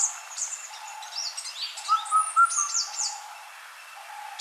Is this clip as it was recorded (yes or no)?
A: yes